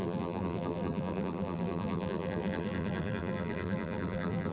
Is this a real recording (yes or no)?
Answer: no